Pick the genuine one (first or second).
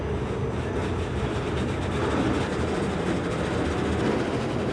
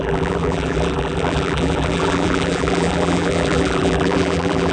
first